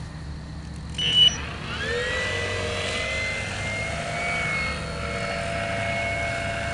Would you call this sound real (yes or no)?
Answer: yes